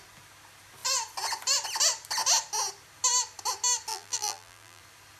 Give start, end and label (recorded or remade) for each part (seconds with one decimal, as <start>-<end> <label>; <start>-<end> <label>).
0.0-3.9 recorded; 3.9-4.8 remade; 4.8-5.2 recorded